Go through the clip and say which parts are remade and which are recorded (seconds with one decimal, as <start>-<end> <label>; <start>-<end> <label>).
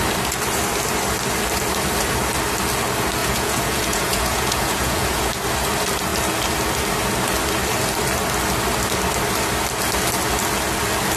0.0-3.2 recorded; 3.2-5.3 remade; 5.3-11.2 recorded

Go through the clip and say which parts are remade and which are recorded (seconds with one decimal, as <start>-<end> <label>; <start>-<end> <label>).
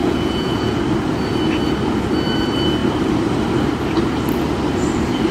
0.0-0.8 remade; 0.8-5.3 recorded